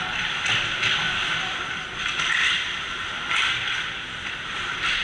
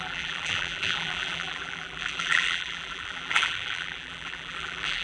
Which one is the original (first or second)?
first